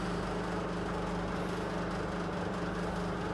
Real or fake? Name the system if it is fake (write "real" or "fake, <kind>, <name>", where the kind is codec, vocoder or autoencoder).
real